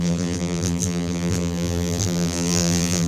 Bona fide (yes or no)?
no